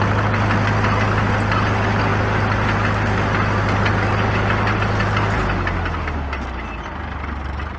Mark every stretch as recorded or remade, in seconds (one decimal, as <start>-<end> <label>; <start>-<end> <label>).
0.0-7.8 recorded

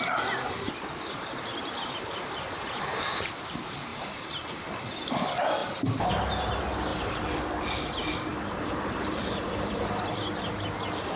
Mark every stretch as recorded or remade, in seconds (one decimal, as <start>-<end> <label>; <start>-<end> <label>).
0.0-3.9 recorded; 3.9-5.1 remade; 5.1-5.6 recorded; 5.6-6.1 remade; 6.1-6.9 recorded; 6.9-7.4 remade; 7.4-8.3 recorded; 8.3-10.2 remade; 10.2-11.2 recorded

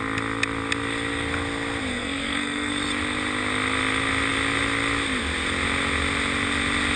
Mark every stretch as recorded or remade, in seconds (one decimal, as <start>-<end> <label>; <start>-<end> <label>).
0.0-1.9 recorded; 1.9-2.7 remade; 2.7-7.0 recorded

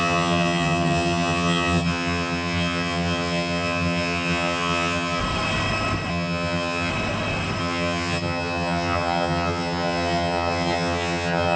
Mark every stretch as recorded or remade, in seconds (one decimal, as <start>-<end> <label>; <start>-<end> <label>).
0.0-5.2 remade; 5.2-6.1 recorded; 6.1-6.9 remade; 6.9-7.6 recorded; 7.6-11.6 remade

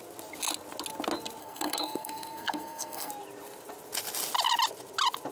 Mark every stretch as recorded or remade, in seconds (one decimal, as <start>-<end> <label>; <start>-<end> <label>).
0.0-1.4 recorded; 1.4-3.1 remade; 3.1-5.3 recorded